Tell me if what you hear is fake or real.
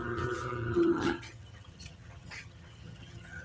fake